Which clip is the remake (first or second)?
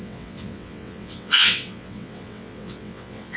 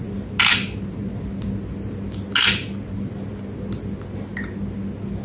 first